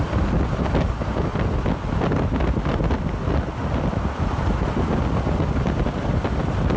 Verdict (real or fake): real